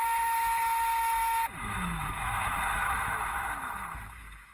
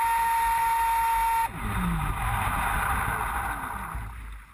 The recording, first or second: second